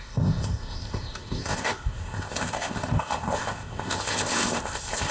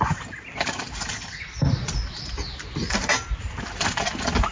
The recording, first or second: second